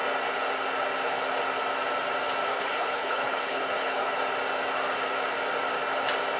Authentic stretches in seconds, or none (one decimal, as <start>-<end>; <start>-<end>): 0.0-2.5; 4.2-6.4